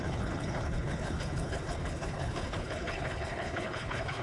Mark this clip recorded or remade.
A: remade